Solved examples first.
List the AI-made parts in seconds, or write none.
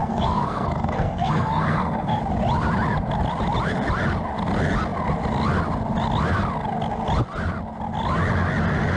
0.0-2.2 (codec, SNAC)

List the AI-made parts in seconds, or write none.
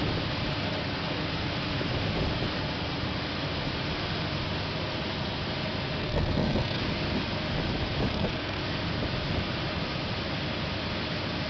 6.0-6.8 (codec, SNAC); 8.1-8.6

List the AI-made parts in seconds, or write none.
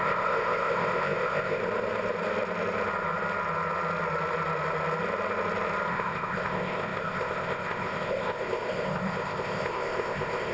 0.0-1.6 (codec, ZipCodec); 5.9-10.5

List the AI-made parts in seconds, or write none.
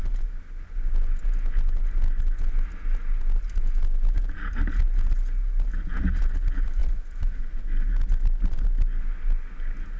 6.8-7.4 (vocoder, BigVGAN v2)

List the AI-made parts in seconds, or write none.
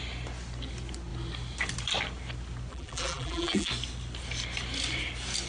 2.7-3.7 (vocoder, BigVGAN v2)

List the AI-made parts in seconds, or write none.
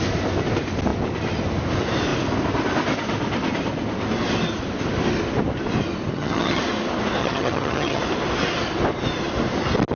6.1-6.6 (vocoder, HiFi-GAN); 7.2-8.0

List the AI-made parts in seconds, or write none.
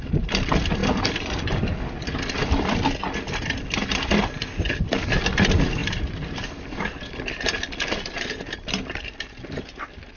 2.4-3.0 (vocoder, BigVGAN v2)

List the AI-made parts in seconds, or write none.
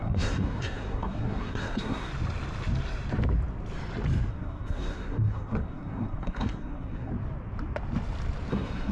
0.0-2.1 (codec, SNAC); 4.3-7.1; 8.5-8.9